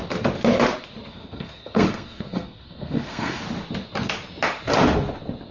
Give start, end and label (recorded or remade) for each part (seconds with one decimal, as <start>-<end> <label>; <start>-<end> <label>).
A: 0.0-1.1 recorded; 1.1-3.4 remade; 3.4-5.5 recorded